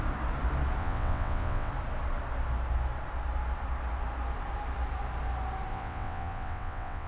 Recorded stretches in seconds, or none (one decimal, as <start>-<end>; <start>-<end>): 0.0-0.8; 1.7-5.7